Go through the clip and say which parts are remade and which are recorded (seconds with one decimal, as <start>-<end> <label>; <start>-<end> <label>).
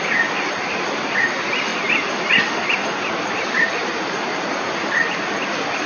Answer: 0.0-5.9 recorded